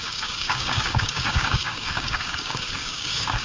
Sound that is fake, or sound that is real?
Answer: fake